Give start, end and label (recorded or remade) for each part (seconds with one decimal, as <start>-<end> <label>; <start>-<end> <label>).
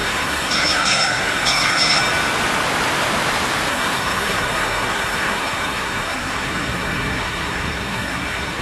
0.0-2.0 remade; 2.0-3.7 recorded; 3.7-8.6 remade